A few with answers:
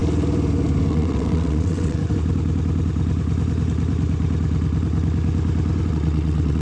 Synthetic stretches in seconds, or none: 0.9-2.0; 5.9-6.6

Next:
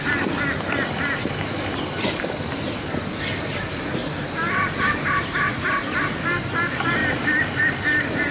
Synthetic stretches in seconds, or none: none

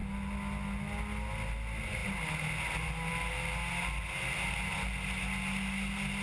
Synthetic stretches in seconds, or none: none